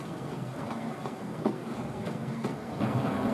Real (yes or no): no